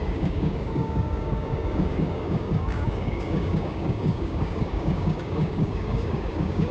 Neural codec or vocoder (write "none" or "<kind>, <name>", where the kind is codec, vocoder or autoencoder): codec, DAC